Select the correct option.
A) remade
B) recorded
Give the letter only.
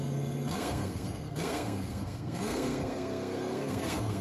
A